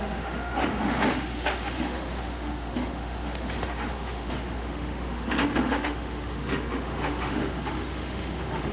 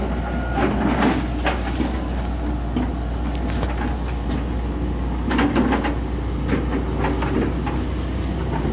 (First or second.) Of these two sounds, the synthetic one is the first